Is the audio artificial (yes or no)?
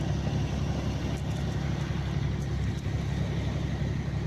no